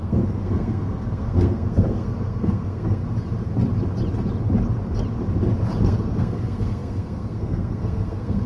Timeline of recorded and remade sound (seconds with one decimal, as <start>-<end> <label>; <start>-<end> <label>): 0.0-3.0 remade; 3.0-5.8 recorded; 5.8-8.5 remade